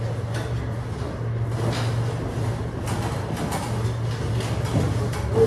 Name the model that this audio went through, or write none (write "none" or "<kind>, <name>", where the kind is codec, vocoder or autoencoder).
none